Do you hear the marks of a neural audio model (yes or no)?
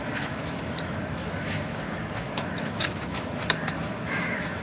yes